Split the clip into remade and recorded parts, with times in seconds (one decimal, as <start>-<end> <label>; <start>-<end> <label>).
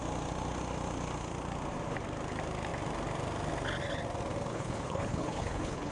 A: 0.0-4.5 recorded; 4.5-5.9 remade